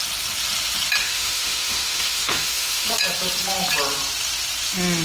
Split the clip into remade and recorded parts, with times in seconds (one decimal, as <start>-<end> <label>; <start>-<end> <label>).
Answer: 0.0-1.0 recorded; 1.0-2.9 remade; 2.9-5.0 recorded